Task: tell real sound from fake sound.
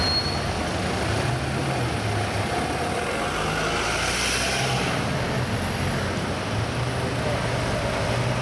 real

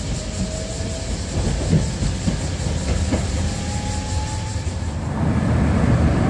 real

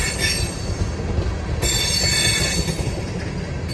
real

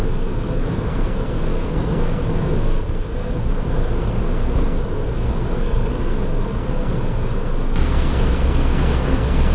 fake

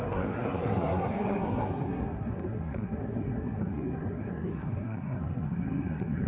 fake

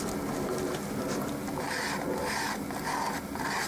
real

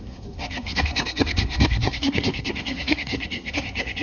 fake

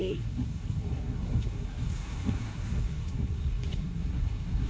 fake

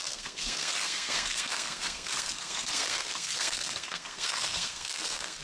fake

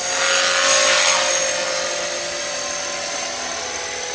real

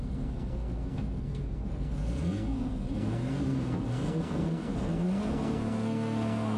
fake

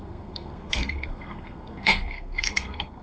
fake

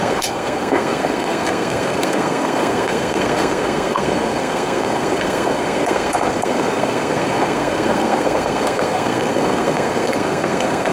fake